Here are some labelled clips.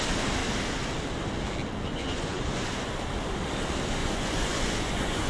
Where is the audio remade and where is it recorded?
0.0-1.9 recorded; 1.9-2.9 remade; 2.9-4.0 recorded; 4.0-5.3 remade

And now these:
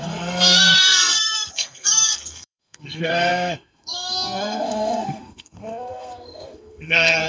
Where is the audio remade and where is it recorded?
0.0-7.3 remade

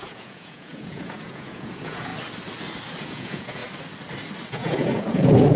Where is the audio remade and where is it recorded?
0.0-2.1 remade; 2.1-3.0 recorded; 3.0-3.6 remade; 3.6-4.5 recorded; 4.5-5.6 remade

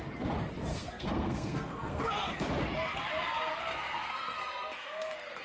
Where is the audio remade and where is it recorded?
0.0-0.7 recorded; 0.7-2.3 remade; 2.3-3.5 recorded; 3.5-5.4 remade